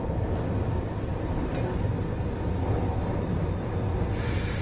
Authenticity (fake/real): real